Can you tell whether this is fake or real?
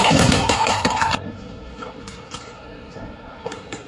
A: fake